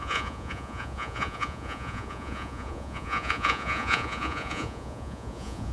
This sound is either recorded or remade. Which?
remade